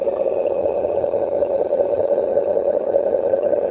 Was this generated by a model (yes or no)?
yes